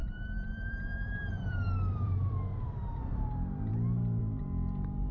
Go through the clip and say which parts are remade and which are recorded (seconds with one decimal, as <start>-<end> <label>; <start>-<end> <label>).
0.0-3.1 remade; 3.1-5.1 recorded